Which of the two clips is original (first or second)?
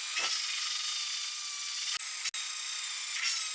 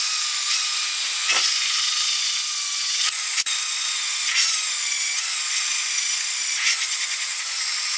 first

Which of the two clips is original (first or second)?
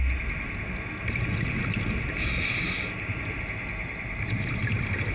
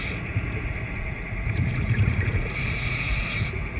first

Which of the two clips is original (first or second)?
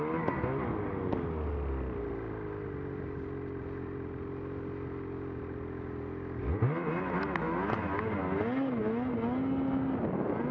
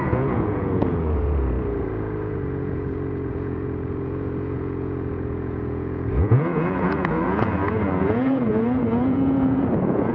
first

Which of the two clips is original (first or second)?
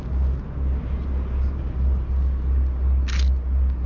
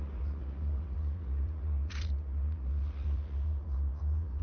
first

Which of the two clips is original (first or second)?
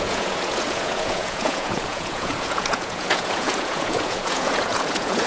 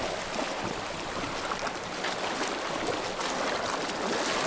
second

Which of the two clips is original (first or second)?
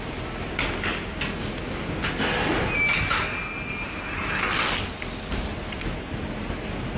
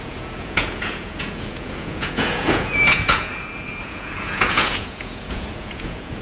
first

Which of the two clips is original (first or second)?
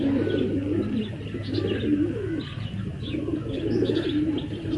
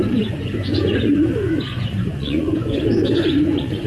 first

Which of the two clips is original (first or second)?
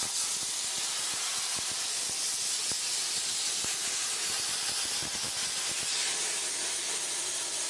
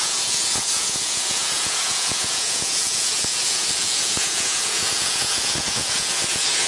first